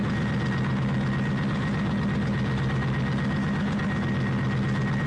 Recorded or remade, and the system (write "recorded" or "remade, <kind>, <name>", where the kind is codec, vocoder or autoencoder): recorded